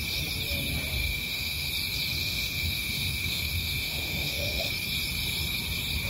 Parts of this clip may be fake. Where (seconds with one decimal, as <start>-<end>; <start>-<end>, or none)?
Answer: 1.0-1.7; 2.2-4.7